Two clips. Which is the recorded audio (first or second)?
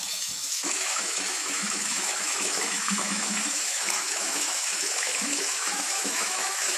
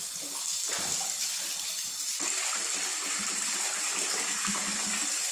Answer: second